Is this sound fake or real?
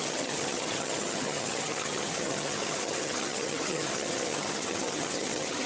fake